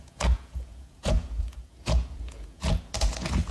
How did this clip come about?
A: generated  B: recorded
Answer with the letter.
A